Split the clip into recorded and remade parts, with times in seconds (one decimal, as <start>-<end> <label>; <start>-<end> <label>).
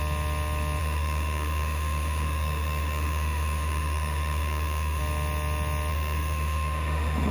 0.0-0.8 recorded; 0.8-5.0 remade; 5.0-5.9 recorded; 5.9-7.3 remade